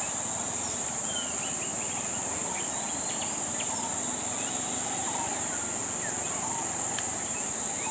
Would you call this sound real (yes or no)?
yes